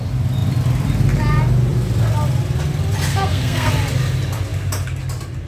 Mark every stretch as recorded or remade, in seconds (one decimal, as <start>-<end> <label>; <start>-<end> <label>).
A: 0.0-3.1 recorded; 3.1-3.7 remade; 3.7-5.5 recorded